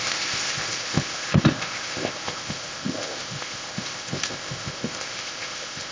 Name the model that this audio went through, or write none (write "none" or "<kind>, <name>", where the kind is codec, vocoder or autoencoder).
codec, ZipCodec